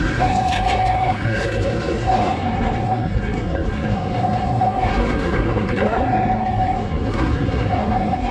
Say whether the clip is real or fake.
fake